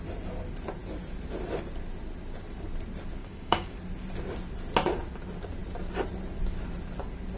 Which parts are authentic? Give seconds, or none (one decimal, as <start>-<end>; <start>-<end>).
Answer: 0.0-3.2; 3.7-7.4